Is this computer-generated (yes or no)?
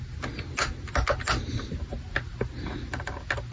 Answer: no